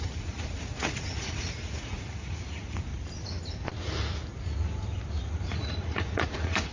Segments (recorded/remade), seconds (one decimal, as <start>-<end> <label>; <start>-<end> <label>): 0.0-2.9 remade; 2.9-5.2 recorded; 5.2-6.7 remade

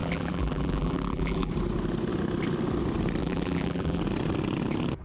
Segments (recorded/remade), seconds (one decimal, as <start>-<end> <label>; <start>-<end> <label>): 0.0-1.5 remade; 1.5-3.2 recorded; 3.2-4.0 remade; 4.0-5.0 recorded

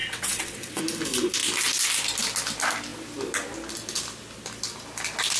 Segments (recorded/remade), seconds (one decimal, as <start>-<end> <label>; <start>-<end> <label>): 0.0-0.8 remade; 0.8-5.4 recorded

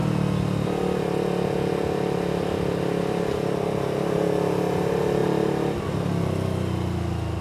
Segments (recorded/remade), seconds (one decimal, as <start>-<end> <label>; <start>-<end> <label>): 0.0-7.4 recorded

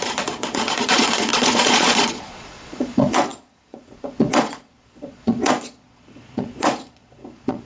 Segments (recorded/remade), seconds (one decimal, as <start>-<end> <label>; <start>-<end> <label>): 0.0-7.7 remade

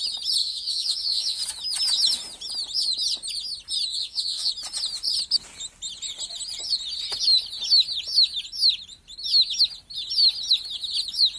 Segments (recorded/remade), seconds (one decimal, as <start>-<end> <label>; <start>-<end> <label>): 0.0-0.4 recorded; 0.4-1.4 remade; 1.4-3.9 recorded; 3.9-4.5 remade; 4.5-11.4 recorded